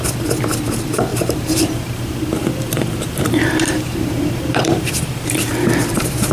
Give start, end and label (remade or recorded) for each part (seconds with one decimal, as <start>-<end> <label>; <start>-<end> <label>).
0.0-1.1 recorded; 1.1-4.9 remade; 4.9-5.5 recorded; 5.5-6.3 remade